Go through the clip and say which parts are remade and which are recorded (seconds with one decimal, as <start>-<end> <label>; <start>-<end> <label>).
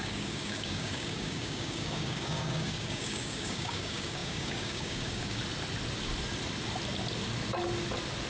0.0-5.4 remade; 5.4-8.3 recorded